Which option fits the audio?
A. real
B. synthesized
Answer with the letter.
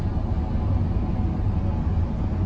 A